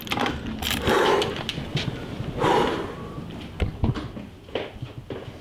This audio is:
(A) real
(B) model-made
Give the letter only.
A